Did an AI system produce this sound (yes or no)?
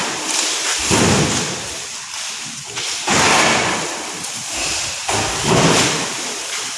yes